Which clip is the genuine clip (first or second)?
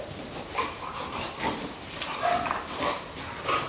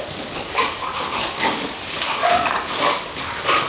first